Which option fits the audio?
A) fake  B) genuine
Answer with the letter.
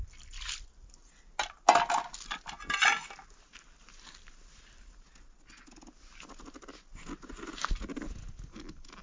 B